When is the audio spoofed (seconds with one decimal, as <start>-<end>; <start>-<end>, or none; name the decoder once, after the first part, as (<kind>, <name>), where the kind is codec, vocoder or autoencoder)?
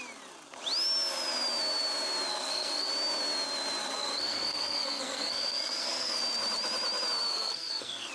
2.3-2.9 (codec, SNAC); 3.8-6.2; 7.3-8.1